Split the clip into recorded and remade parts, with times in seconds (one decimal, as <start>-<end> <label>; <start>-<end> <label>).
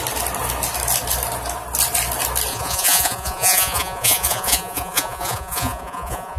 0.0-2.5 recorded; 2.5-6.4 remade